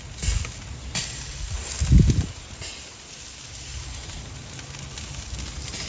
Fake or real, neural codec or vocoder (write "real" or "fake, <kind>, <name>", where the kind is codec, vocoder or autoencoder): real